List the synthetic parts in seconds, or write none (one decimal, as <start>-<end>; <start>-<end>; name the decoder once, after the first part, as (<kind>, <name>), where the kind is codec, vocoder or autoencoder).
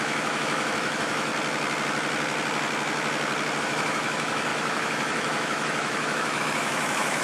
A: 0.0-1.3 (autoencoder, DAC-VAE); 3.6-7.2